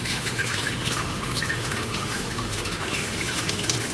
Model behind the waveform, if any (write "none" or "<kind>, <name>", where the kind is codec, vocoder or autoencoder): autoencoder, DAC-VAE